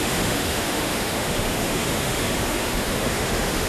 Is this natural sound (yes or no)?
no